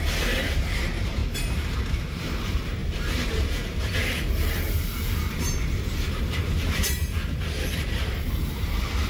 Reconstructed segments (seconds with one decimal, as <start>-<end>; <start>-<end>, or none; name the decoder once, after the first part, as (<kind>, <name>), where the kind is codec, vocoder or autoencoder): 0.0-1.2 (vocoder, BigVGAN v2); 1.8-9.1